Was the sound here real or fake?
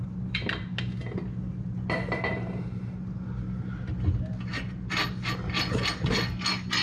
real